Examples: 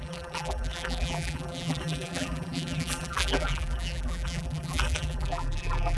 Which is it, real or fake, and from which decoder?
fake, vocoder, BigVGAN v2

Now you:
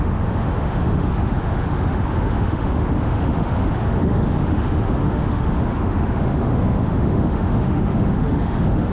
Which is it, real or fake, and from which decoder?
fake, autoencoder, DAC-VAE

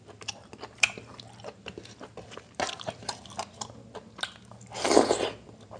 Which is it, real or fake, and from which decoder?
real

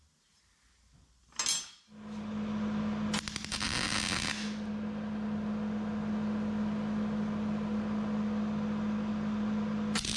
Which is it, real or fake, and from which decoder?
real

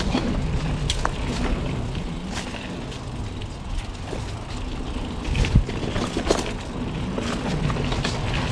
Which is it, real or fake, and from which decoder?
real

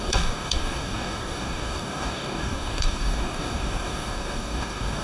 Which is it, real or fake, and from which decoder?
fake, codec, DAC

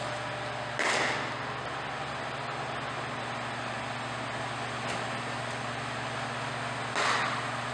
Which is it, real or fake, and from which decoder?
real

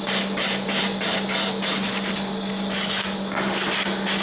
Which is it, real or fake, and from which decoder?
real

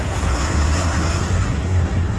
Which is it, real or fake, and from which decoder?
fake, codec, SNAC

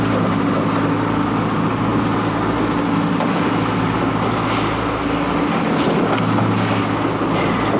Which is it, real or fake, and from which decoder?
real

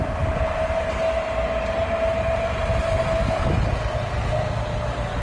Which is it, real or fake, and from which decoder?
real